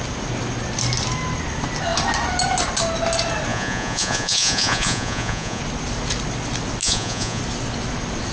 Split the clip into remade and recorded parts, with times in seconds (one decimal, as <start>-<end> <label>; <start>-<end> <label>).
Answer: 0.0-3.5 recorded; 3.5-5.6 remade; 5.6-6.8 recorded; 6.8-7.4 remade; 7.4-8.3 recorded